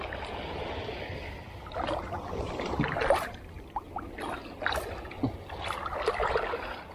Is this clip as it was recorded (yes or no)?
yes